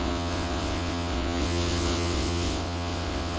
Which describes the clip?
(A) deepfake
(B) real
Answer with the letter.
A